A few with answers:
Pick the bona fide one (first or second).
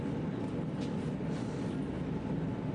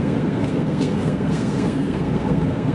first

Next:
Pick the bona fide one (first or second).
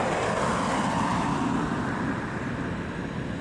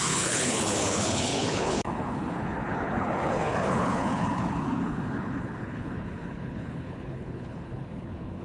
first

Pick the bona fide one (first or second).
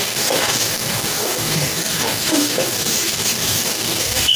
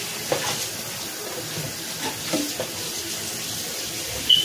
second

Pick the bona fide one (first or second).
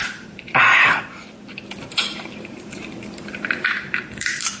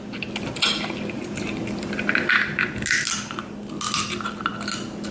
second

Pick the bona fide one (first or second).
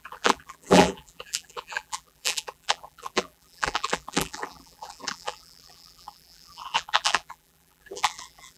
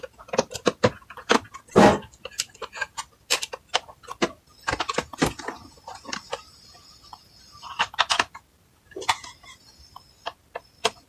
second